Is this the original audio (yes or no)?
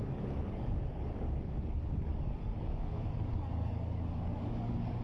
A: no